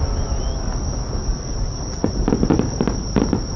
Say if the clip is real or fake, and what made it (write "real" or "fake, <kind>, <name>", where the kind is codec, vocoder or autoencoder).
real